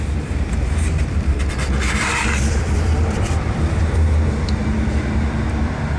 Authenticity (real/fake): fake